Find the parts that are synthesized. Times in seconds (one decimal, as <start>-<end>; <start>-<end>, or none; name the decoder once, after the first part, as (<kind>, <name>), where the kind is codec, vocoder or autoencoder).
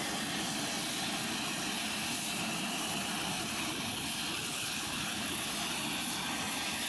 4.5-5.5 (codec, HILCodec)